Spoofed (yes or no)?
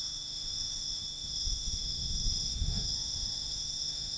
yes